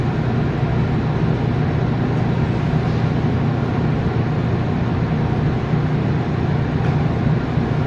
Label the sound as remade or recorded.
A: recorded